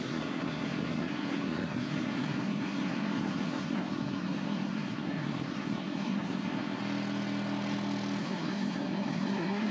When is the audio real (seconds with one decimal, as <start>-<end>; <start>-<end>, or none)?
6.8-8.2

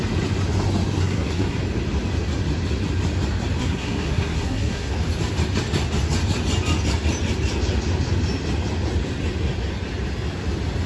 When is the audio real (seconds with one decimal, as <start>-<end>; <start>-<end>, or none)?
0.0-1.0; 1.6-3.6; 4.9-10.9

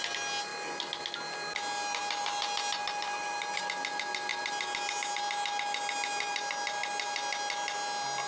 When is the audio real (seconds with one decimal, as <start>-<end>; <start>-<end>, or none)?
0.0-8.3